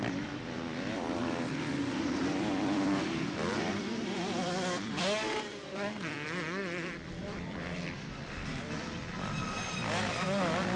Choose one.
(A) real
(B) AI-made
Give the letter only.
B